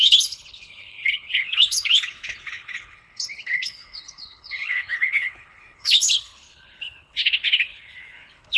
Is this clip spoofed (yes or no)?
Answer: yes